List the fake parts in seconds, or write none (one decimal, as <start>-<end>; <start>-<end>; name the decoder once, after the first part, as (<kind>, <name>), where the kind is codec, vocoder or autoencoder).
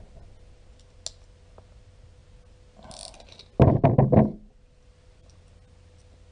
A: none